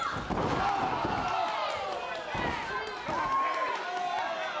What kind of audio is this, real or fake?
real